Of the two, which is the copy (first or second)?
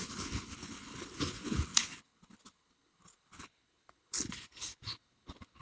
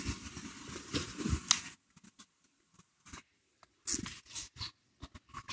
first